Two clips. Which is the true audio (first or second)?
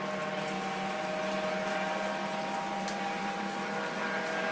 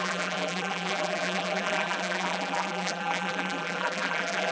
first